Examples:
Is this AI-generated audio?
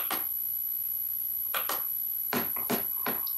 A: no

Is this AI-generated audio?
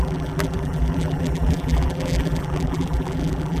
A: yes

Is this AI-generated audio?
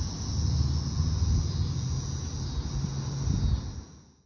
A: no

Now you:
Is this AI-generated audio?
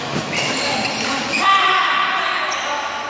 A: no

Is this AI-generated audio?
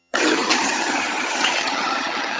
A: yes